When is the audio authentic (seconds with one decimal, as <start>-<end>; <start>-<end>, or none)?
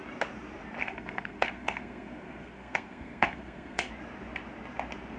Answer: 0.0-0.8; 3.9-5.2